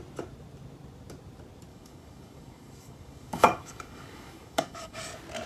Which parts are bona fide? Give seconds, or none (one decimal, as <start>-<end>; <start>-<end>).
0.0-1.7; 5.0-5.5

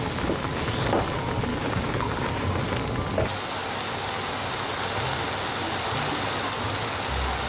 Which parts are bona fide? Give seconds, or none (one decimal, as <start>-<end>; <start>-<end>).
0.0-1.5; 2.3-7.5

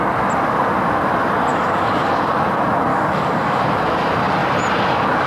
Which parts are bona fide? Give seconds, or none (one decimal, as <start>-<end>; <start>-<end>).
0.0-1.5; 2.1-2.9; 3.6-5.3

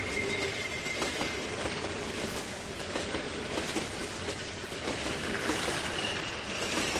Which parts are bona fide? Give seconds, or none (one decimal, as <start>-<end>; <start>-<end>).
0.0-1.1; 3.4-4.0; 6.1-7.0

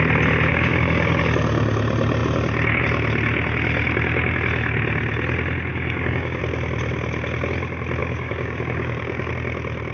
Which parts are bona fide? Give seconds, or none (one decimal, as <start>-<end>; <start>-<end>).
0.0-0.5; 1.2-5.7; 6.4-8.0; 9.3-9.9

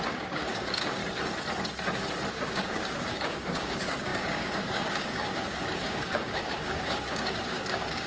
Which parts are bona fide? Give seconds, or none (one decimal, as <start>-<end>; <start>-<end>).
1.0-2.3